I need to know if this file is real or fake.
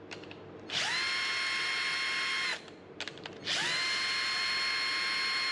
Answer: real